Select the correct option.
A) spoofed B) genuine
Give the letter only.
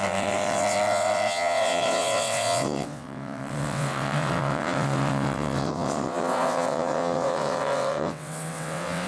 A